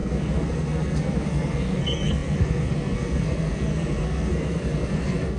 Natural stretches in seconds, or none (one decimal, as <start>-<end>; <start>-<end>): none